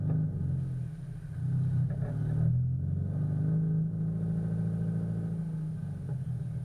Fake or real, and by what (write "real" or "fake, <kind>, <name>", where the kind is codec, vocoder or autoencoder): real